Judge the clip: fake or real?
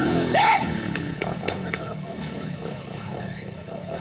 fake